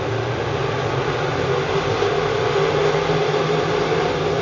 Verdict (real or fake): real